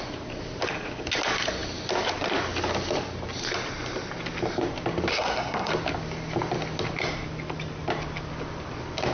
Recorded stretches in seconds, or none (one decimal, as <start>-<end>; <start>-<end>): 0.0-5.1; 5.7-9.1

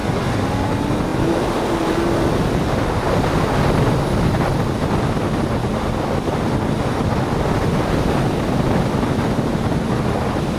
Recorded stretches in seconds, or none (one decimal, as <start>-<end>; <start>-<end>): 0.0-10.6

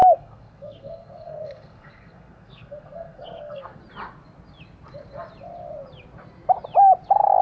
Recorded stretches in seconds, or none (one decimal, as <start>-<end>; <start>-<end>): 3.8-7.4

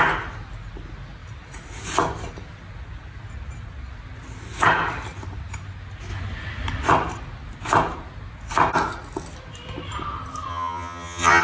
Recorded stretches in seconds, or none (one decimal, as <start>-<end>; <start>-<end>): 0.0-10.5

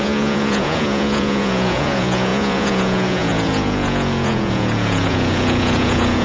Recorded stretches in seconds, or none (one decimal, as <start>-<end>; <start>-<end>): none

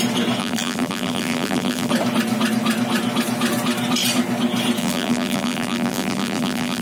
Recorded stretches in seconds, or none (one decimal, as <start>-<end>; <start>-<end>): 0.0-0.4; 1.9-4.8